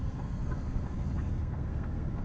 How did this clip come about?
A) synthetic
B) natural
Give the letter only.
A